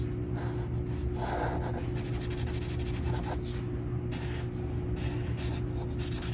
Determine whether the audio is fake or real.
real